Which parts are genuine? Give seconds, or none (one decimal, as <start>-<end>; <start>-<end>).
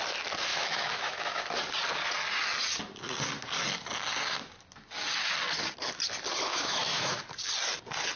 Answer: 0.0-0.5; 1.4-6.5; 7.2-8.2